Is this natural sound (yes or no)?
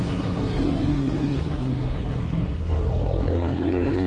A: no